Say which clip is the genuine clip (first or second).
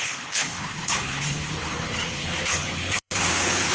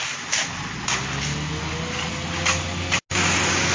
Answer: second